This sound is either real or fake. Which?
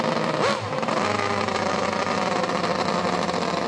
real